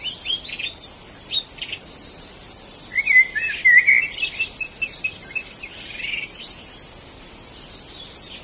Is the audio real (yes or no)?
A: yes